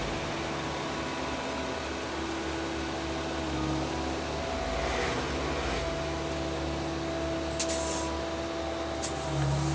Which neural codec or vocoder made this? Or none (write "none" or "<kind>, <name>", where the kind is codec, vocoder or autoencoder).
none